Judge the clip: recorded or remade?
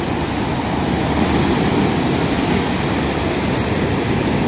remade